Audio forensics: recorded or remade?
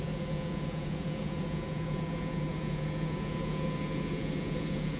remade